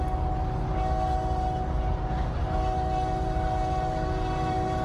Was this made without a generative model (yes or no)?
yes